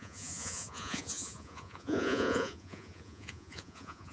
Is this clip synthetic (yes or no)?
yes